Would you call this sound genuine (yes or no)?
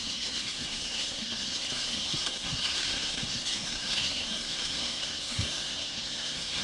no